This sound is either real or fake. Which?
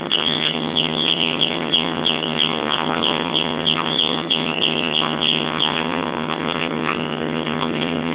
fake